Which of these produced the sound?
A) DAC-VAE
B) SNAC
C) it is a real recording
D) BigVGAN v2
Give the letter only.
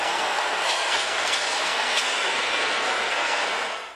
B